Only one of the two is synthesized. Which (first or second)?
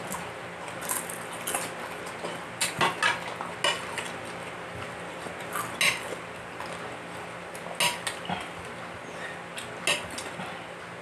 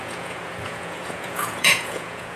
second